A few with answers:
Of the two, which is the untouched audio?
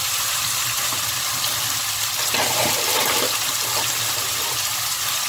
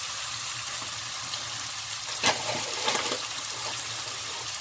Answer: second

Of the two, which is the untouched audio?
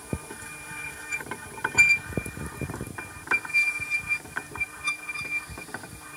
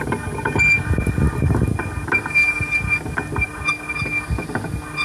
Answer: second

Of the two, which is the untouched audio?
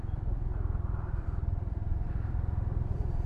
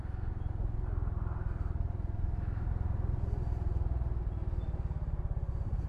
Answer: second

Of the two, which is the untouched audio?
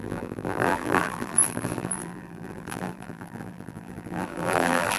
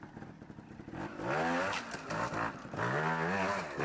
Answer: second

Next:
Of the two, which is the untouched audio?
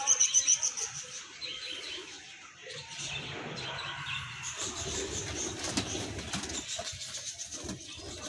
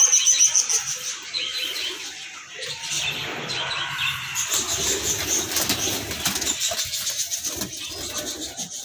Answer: second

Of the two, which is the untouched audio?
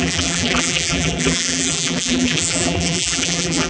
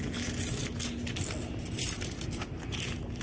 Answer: second